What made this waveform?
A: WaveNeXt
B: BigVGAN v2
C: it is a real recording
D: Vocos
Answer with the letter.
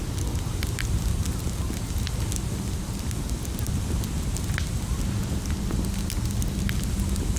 C